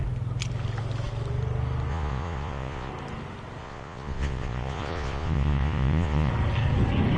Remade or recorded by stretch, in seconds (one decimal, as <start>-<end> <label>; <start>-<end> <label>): 0.0-1.9 recorded; 1.9-2.9 remade; 2.9-3.6 recorded; 3.6-6.3 remade; 6.3-7.2 recorded